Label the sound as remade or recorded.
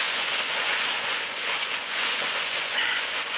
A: remade